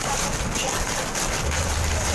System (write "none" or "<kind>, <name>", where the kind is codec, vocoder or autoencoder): none